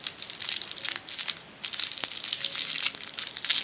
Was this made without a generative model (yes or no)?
yes